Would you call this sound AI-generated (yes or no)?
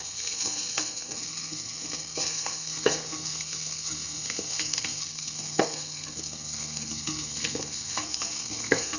yes